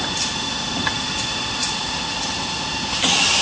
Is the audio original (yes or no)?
yes